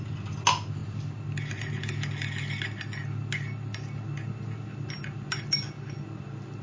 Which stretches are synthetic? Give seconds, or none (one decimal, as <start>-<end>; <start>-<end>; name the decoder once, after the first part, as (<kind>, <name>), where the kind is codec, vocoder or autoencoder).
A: none